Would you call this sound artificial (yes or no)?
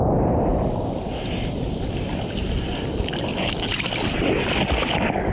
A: no